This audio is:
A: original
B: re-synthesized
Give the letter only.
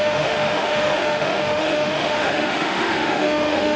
B